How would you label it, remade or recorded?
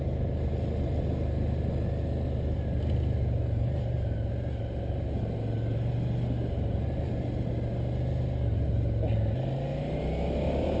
recorded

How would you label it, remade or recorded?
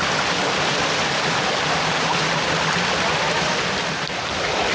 recorded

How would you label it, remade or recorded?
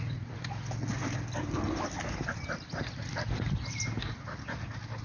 recorded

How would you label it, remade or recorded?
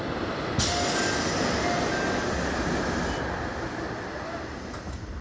recorded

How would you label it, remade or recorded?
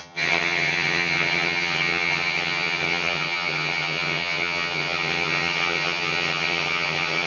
remade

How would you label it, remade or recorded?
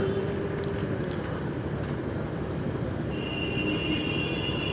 recorded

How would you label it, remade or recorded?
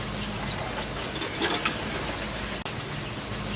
recorded